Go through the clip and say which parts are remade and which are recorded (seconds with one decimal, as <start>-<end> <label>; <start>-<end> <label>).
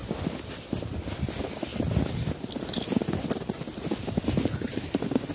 0.0-5.3 recorded